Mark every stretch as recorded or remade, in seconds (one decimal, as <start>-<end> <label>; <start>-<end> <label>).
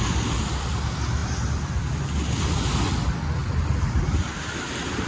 0.0-5.1 recorded